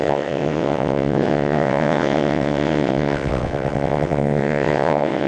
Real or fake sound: fake